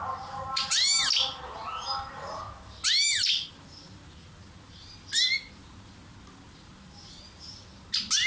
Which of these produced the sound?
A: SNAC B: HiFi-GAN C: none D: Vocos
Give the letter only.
C